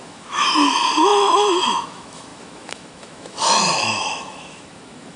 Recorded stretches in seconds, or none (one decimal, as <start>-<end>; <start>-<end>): none